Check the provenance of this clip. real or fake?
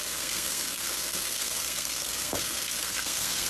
fake